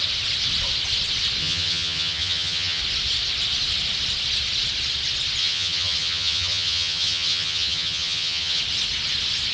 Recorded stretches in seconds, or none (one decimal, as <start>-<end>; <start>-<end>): 0.0-1.4; 2.8-5.4; 8.6-9.5